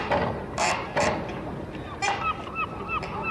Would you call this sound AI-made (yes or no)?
yes